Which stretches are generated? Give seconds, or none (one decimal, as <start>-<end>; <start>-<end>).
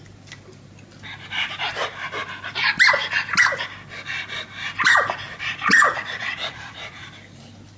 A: 5.8-7.0